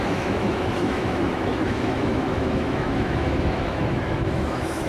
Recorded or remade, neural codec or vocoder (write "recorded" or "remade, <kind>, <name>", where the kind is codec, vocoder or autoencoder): remade, autoencoder, DAC-VAE